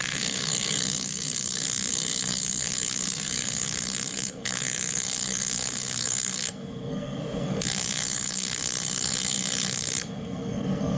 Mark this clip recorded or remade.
remade